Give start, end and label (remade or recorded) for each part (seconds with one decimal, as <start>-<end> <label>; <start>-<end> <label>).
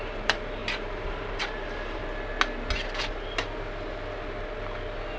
0.0-2.0 remade; 2.0-5.2 recorded